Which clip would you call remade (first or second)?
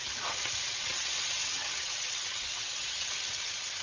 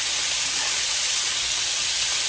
first